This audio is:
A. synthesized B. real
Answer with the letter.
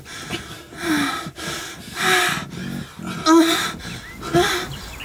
B